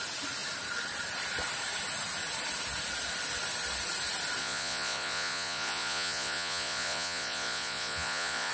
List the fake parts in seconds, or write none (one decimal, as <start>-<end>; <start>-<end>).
4.4-8.5